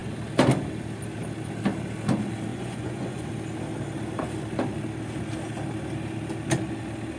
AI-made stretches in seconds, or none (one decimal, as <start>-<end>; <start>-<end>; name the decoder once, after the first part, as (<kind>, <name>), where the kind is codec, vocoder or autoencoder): 2.5-3.3 (vocoder, Vocos)